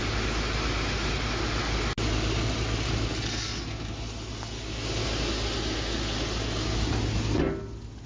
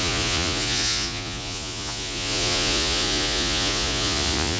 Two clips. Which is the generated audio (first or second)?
second